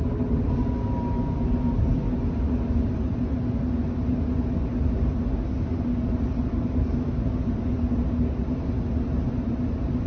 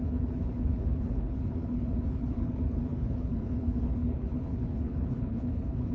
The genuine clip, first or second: first